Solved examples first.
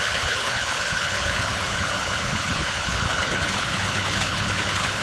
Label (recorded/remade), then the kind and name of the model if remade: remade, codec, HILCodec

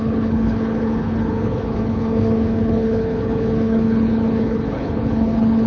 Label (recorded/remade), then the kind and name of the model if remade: remade, codec, HILCodec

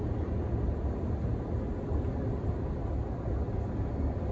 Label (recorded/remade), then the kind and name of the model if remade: recorded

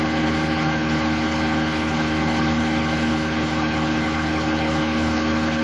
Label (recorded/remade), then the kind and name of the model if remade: remade, codec, HILCodec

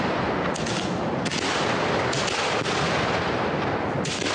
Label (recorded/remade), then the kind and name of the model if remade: recorded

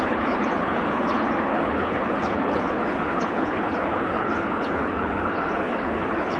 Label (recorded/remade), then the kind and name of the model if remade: remade, codec, HILCodec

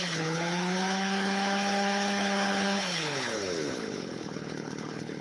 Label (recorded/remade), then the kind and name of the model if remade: remade, codec, HILCodec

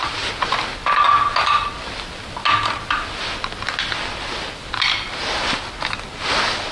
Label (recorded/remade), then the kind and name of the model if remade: recorded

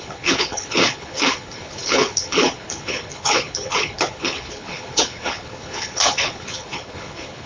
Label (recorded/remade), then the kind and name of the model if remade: remade, codec, HILCodec